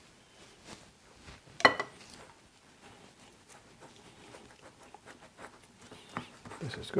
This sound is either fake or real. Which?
real